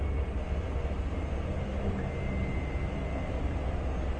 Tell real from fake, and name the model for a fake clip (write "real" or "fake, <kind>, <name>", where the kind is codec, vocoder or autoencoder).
real